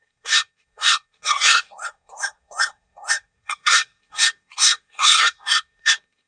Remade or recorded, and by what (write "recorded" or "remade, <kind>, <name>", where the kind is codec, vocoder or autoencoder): remade, codec, SNAC